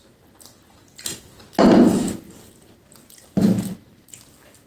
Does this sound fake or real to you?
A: real